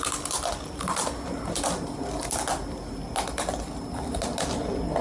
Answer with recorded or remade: recorded